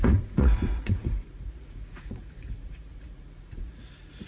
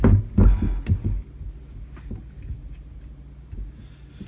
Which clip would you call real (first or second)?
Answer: second